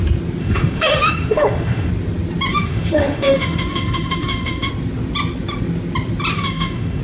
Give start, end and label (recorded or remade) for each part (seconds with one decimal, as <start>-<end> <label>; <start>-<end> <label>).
0.0-0.4 recorded; 0.4-1.9 remade; 1.9-2.5 recorded; 2.5-4.7 remade; 4.7-6.3 recorded; 6.3-7.0 remade